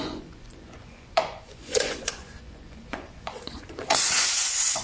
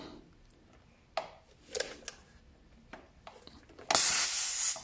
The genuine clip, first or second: second